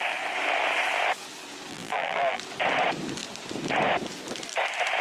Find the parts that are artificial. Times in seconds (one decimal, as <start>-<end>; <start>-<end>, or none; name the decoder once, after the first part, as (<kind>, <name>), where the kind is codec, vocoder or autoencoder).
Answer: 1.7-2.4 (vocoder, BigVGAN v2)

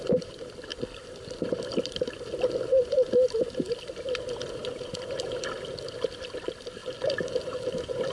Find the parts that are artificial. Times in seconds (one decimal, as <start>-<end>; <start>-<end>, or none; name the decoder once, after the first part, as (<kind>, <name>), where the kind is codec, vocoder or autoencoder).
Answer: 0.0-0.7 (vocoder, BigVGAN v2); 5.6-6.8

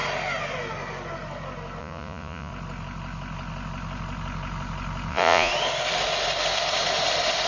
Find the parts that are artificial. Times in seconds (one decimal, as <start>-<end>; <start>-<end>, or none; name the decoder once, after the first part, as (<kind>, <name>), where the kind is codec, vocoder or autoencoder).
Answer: 1.8-2.5 (vocoder, Vocos); 5.1-5.5

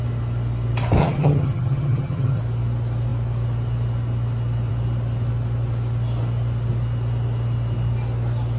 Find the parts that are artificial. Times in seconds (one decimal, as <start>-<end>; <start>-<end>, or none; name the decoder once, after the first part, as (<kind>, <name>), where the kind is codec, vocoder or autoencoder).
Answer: 1.0-2.4 (vocoder, HiFi-GAN)

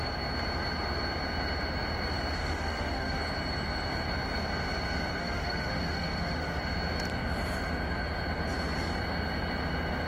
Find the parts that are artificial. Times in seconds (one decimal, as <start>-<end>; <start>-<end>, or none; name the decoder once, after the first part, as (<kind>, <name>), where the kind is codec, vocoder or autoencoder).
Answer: 2.3-3.2 (autoencoder, DAC-VAE); 5.2-6.6

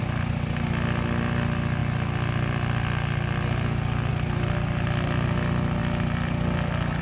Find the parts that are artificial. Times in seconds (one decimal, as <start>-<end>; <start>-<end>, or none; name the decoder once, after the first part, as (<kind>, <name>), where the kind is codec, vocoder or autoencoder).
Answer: none

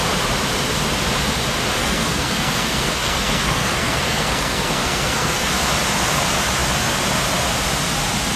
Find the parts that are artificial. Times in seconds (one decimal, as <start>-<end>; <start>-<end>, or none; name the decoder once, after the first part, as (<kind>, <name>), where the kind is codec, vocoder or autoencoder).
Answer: 1.8-5.5 (codec, SNAC)

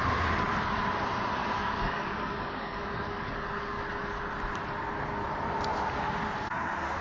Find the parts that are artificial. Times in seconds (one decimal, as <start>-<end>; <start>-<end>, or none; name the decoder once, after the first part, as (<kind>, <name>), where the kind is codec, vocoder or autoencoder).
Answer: 1.4-4.2 (codec, DAC)